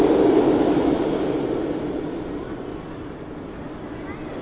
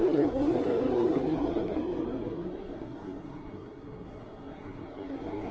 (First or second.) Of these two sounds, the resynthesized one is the second